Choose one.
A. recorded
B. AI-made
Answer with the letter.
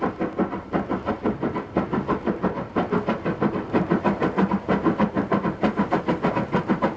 A